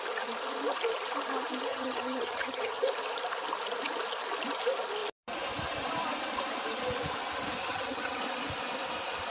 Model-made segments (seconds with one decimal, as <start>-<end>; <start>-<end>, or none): 1.7-2.8; 7.6-8.2